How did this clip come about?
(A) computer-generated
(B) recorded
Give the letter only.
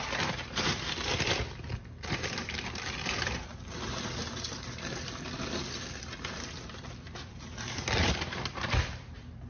A